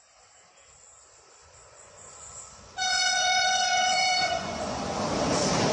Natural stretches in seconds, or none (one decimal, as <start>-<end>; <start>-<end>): 0.0-1.4; 4.8-5.7